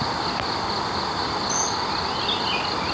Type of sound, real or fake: real